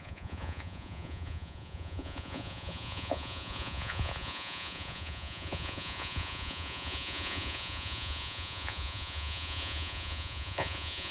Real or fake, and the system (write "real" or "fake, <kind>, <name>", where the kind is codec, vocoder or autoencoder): fake, vocoder, Vocos